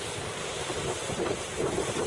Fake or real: real